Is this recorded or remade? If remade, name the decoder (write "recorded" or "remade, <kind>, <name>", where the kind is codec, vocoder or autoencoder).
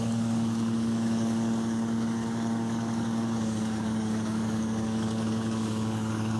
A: remade, codec, DAC